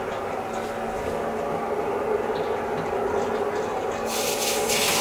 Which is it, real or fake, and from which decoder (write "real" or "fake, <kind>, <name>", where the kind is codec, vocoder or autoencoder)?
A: real